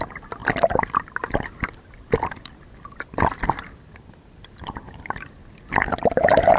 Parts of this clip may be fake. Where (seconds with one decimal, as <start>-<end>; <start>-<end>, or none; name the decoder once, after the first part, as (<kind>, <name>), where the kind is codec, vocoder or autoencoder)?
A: none